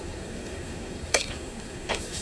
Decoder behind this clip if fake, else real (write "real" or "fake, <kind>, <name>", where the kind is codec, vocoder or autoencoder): fake, codec, SNAC